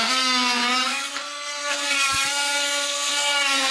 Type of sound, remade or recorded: remade